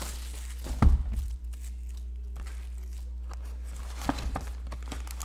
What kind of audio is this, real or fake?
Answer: real